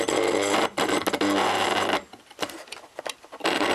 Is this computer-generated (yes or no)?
no